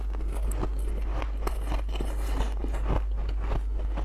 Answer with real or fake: real